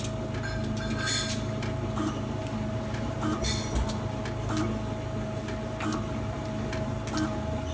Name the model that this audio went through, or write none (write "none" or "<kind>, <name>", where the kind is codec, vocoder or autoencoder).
none